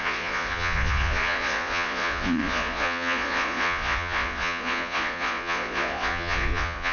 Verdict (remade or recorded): remade